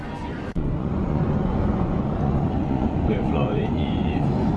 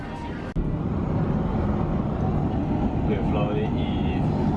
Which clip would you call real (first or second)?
second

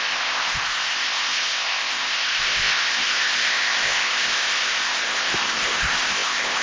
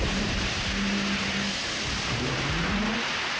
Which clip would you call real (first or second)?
second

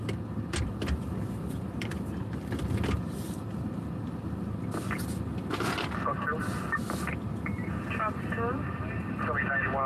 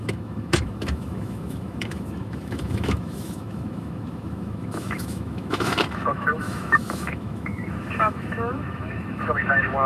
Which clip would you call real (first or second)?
first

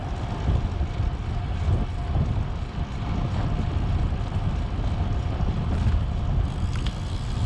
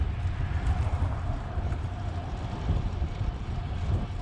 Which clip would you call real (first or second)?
first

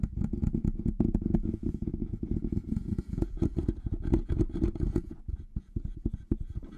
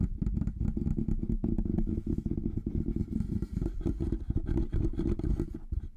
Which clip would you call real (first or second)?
second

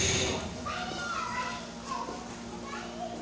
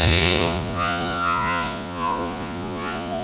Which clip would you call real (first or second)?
first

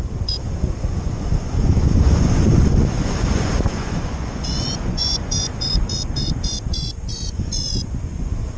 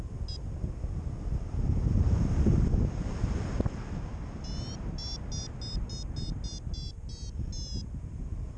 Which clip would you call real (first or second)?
second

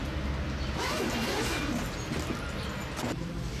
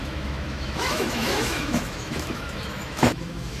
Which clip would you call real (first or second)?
first